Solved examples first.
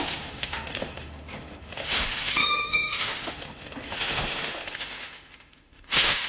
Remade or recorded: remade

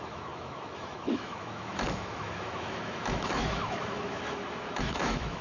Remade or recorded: remade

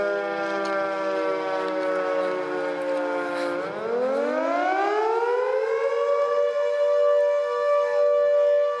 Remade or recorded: recorded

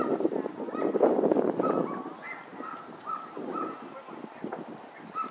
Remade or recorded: recorded